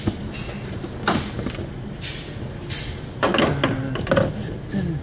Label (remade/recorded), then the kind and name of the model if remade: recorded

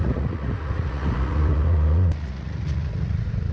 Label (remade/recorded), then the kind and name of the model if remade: remade, vocoder, Vocos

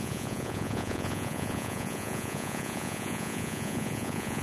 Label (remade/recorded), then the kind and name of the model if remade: remade, vocoder, Vocos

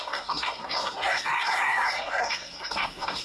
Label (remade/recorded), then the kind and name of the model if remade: remade, codec, SNAC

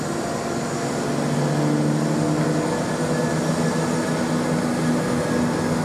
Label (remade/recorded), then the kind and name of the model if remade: recorded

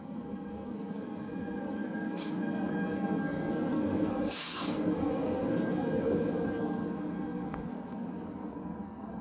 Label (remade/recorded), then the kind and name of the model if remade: remade, codec, SNAC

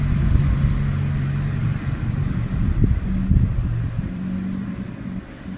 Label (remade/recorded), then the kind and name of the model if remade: recorded